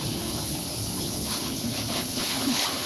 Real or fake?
fake